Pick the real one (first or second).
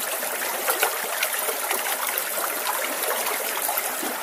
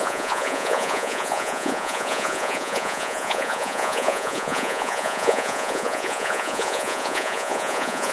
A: first